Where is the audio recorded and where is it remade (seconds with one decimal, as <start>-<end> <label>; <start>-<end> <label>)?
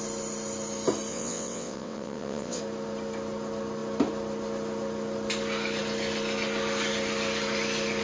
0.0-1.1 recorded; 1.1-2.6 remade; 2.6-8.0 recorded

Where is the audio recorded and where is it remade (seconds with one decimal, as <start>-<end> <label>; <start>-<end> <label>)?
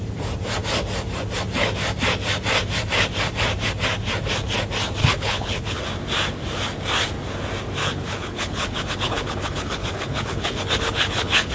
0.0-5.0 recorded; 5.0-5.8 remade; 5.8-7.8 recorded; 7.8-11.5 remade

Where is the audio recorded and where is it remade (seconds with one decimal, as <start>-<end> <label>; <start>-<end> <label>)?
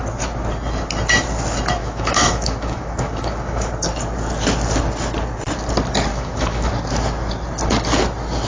0.0-1.8 recorded; 1.8-3.7 remade; 3.7-6.1 recorded; 6.1-6.7 remade; 6.7-8.5 recorded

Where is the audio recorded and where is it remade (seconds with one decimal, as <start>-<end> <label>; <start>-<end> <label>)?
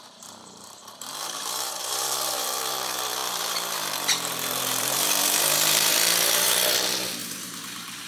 0.0-8.1 remade